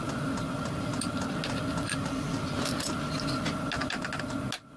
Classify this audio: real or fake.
real